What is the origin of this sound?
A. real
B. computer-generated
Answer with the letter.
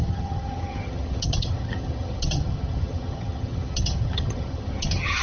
B